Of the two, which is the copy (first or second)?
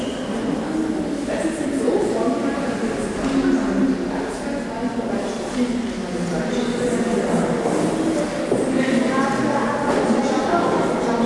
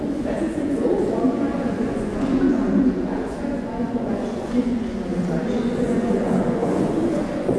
second